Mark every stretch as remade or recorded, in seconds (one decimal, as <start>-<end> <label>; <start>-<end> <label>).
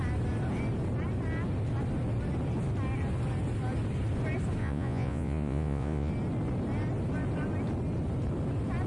0.0-4.6 recorded; 4.6-6.1 remade; 6.1-8.9 recorded